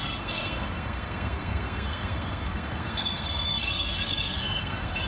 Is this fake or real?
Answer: fake